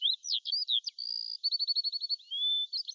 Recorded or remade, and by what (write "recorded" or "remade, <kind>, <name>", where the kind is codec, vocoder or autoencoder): recorded